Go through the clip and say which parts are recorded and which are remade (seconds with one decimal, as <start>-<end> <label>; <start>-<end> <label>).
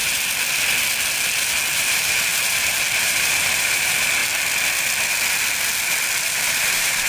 0.0-1.9 recorded; 1.9-2.3 remade; 2.3-3.0 recorded; 3.0-4.2 remade; 4.2-6.5 recorded; 6.5-7.1 remade